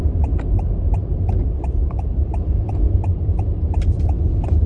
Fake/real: fake